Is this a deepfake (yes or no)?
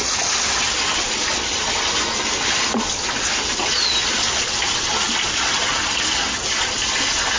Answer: no